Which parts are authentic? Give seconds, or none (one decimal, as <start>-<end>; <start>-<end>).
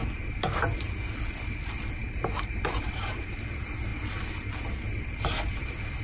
0.0-1.0